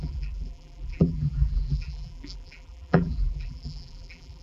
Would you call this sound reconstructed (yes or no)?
yes